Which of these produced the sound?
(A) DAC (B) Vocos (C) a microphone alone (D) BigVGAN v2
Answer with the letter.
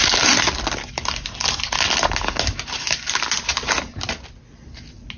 C